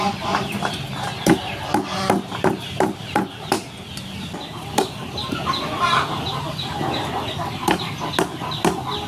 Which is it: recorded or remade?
recorded